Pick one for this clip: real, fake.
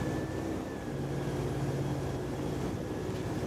real